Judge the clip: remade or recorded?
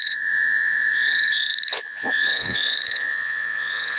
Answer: remade